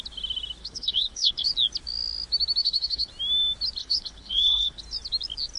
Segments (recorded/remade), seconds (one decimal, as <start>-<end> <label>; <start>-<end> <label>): 0.0-0.6 recorded; 0.6-1.5 remade; 1.5-2.6 recorded; 2.6-3.1 remade; 3.1-3.8 recorded; 3.8-4.8 remade; 4.8-5.6 recorded